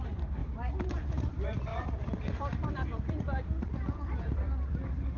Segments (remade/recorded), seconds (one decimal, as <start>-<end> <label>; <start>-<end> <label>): 0.0-0.4 remade; 0.4-1.0 recorded; 1.0-5.2 remade